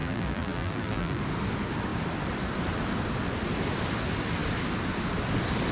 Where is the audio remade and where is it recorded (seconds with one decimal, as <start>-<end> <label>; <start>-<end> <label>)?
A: 0.0-1.2 remade; 1.2-5.7 recorded